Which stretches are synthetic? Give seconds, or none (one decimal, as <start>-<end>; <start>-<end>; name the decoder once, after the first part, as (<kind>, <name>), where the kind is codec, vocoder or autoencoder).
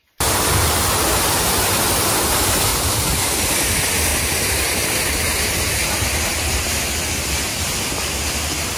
2.7-3.5 (vocoder, BigVGAN v2); 4.1-5.9; 7.5-8.2